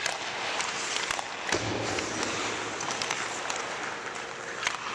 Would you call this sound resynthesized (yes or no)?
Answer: no